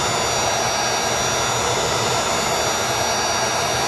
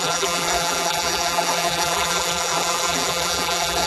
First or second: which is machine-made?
second